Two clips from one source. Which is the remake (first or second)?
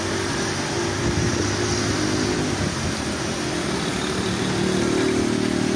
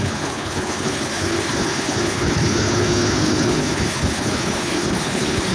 second